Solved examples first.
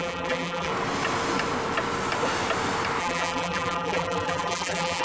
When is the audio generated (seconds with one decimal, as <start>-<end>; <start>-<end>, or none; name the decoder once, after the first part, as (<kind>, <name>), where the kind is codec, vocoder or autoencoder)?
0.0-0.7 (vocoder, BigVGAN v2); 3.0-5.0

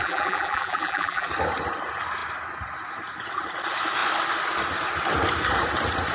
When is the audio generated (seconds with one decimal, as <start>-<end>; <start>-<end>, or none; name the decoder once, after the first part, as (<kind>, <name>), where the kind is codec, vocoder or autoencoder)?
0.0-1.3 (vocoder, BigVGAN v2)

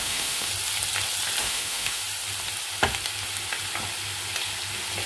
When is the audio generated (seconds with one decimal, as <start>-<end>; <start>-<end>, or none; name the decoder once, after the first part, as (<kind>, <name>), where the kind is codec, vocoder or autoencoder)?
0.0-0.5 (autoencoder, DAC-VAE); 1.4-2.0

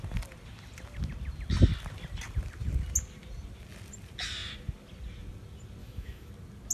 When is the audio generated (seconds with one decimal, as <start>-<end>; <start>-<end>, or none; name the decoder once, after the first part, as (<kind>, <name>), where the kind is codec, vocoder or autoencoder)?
5.8-6.3 (autoencoder, DAC-VAE)

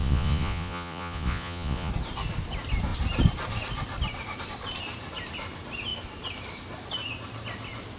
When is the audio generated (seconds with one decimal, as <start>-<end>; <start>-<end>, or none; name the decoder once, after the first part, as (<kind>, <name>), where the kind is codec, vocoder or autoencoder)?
0.0-1.9 (vocoder, Vocos)

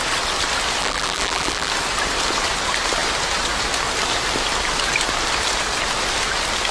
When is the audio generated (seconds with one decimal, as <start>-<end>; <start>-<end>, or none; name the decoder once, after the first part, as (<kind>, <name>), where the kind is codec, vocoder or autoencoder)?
0.8-1.7 (vocoder, BigVGAN v2)